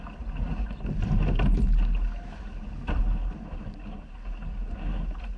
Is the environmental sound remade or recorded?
recorded